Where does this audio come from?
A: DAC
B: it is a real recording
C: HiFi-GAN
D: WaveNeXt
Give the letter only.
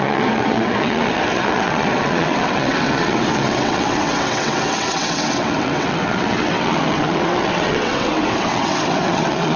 D